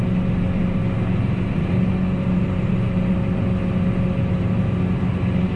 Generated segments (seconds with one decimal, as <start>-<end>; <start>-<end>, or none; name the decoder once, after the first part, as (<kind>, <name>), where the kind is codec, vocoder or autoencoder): none